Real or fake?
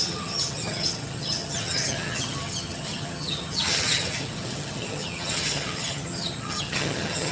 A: fake